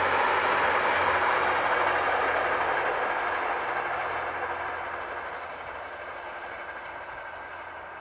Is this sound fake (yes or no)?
no